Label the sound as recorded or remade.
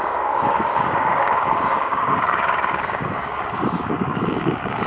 remade